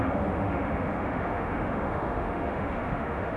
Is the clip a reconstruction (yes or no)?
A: yes